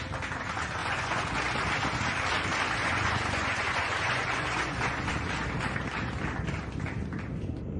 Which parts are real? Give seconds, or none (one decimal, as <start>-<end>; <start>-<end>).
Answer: 0.0-0.8; 1.4-2.8; 5.1-7.8